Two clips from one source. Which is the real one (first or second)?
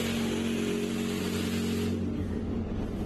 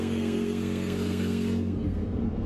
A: first